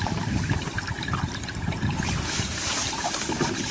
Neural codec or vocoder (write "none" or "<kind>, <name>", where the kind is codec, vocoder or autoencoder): vocoder, BigVGAN v2